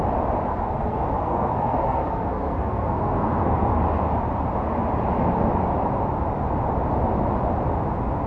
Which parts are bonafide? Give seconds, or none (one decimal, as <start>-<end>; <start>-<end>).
0.0-0.5; 3.8-8.3